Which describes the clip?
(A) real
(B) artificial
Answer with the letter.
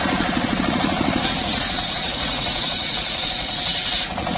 B